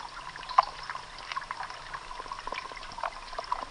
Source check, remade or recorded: recorded